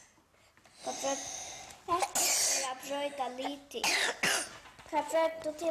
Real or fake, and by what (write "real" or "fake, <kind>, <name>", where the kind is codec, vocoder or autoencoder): real